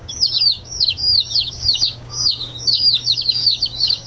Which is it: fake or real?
fake